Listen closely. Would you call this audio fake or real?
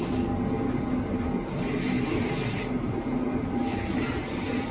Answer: real